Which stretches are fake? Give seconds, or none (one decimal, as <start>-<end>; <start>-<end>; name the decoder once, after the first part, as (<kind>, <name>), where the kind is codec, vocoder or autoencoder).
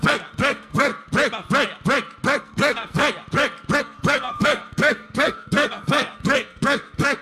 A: 0.0-0.9 (codec, SNAC); 2.4-3.0; 3.8-7.2